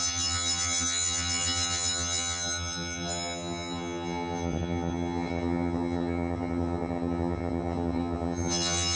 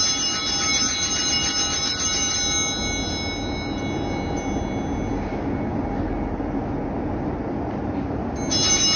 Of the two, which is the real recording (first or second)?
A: second